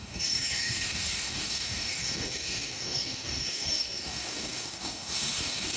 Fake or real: fake